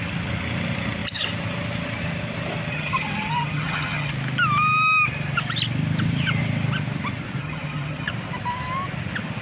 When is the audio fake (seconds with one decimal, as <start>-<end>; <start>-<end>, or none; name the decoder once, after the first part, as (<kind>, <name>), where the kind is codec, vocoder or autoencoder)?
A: 2.7-4.1 (vocoder, HiFi-GAN); 7.4-8.1